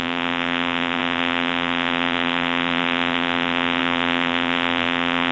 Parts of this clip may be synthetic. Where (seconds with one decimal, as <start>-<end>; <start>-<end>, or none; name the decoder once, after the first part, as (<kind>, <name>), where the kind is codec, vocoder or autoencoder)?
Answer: 0.0-5.3 (vocoder, BigVGAN v2)